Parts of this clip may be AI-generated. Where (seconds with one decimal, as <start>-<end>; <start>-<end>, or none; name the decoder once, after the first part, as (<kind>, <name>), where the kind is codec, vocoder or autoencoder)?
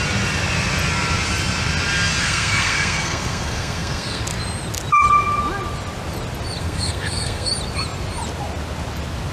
2.2-4.2 (codec, SNAC); 6.6-7.5